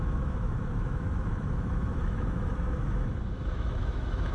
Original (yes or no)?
no